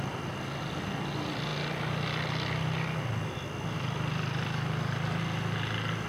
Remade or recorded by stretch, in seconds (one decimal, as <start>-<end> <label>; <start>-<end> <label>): 0.0-6.1 recorded